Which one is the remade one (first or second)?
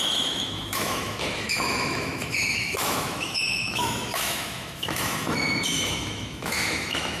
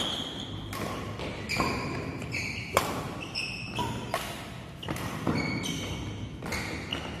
first